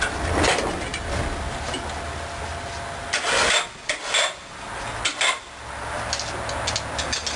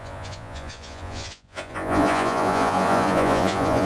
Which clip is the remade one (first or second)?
second